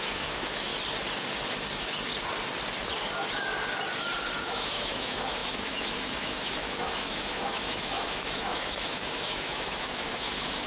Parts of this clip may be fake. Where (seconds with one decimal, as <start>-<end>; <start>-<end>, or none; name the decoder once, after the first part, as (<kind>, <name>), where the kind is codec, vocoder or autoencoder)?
0.0-0.7 (autoencoder, DAC-VAE); 4.4-10.7